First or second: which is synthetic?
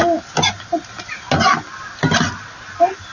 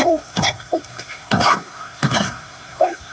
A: second